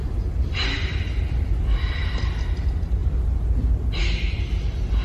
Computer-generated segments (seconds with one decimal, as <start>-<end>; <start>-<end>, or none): 0.0-2.4; 3.0-3.7